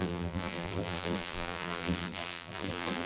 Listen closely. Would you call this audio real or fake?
fake